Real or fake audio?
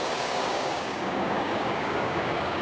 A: fake